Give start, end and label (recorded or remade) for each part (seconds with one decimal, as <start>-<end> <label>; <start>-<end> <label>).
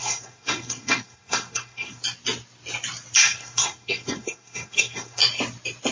0.0-2.0 remade; 2.0-3.2 recorded; 3.2-5.2 remade; 5.2-5.9 recorded